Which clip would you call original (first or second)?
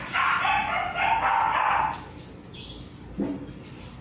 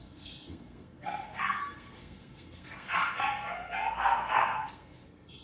first